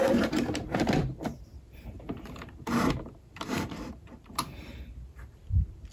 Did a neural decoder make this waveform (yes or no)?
yes